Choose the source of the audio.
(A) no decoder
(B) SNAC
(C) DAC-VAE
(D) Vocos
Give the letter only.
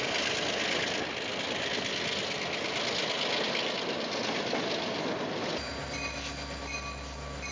A